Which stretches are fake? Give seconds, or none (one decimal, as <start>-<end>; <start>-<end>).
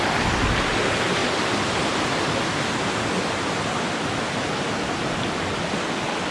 none